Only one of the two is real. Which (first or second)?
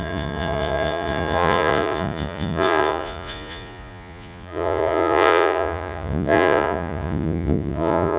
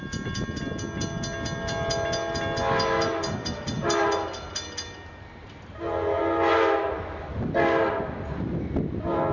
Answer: second